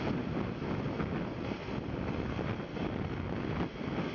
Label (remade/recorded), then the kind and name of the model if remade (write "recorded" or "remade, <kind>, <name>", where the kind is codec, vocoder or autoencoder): recorded